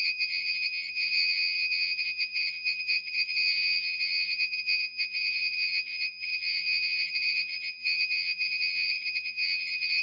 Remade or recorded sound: remade